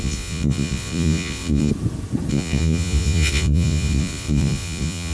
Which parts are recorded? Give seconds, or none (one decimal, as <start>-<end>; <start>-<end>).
1.7-2.3